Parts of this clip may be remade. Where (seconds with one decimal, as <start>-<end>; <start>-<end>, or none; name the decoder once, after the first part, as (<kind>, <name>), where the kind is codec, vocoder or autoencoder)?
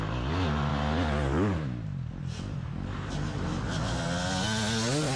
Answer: none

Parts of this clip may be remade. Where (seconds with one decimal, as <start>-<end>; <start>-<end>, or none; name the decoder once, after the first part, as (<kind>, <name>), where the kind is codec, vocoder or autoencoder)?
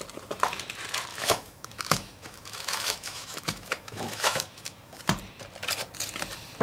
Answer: 1.1-5.0 (autoencoder, DAC-VAE)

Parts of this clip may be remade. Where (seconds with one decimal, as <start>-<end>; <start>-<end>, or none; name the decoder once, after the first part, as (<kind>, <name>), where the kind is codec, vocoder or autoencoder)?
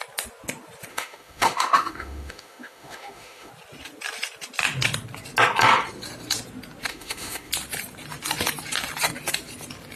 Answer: 0.9-3.5 (autoencoder, DAC-VAE); 6.9-7.5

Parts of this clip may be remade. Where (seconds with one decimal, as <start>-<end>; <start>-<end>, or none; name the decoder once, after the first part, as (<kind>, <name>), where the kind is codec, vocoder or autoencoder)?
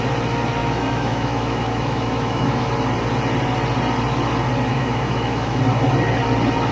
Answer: 0.6-2.7 (autoencoder, DAC-VAE); 4.7-5.6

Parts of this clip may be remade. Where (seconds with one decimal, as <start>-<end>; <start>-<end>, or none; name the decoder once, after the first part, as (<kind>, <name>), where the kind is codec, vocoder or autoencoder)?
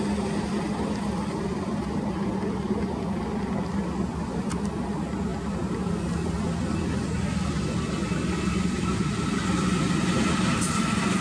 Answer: none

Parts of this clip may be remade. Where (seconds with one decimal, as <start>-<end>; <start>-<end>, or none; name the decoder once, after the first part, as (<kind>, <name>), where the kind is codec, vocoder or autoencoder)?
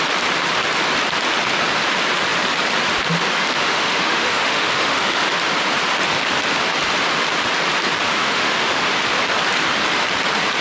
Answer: 3.6-5.2 (autoencoder, DAC-VAE); 8.2-8.8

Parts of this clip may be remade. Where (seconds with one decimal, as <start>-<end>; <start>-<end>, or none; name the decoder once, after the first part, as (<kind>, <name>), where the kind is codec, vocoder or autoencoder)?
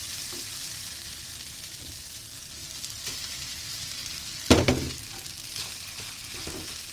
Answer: none